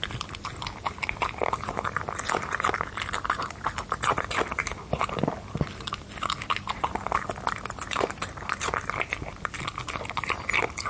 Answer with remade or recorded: recorded